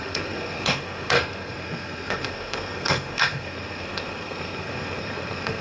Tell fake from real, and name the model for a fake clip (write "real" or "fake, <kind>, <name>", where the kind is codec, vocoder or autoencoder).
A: fake, codec, SNAC